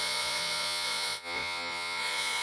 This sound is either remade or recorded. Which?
remade